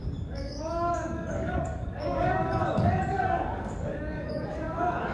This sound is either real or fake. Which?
fake